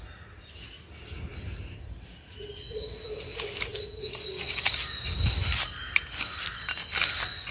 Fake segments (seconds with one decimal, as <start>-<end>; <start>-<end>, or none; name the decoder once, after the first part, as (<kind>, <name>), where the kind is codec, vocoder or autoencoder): none